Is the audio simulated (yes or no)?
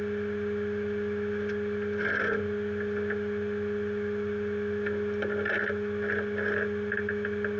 no